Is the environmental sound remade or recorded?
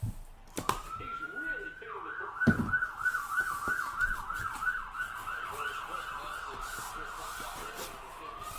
recorded